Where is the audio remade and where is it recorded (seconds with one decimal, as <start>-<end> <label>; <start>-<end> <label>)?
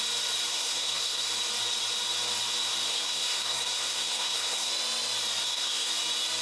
0.0-0.5 recorded; 0.5-1.3 remade; 1.3-2.9 recorded; 2.9-4.7 remade; 4.7-5.4 recorded; 5.4-5.9 remade; 5.9-6.4 recorded